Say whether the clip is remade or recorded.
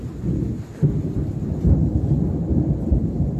recorded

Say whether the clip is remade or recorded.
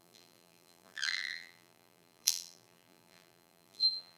remade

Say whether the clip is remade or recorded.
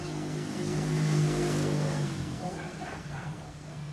remade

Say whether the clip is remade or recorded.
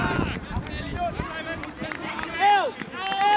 recorded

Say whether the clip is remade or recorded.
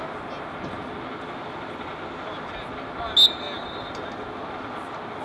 recorded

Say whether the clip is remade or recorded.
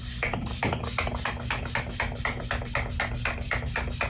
recorded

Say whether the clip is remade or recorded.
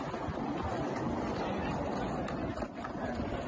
recorded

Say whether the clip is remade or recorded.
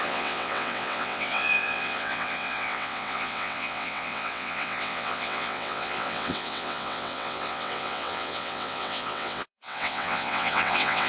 remade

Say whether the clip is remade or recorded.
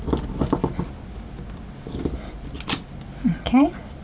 recorded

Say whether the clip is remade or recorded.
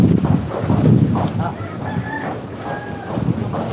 recorded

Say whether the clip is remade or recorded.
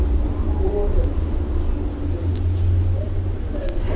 recorded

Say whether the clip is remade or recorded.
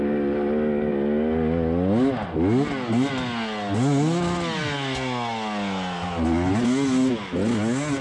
recorded